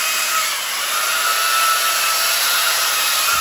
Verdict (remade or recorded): remade